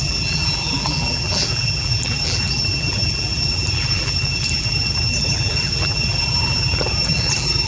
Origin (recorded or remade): remade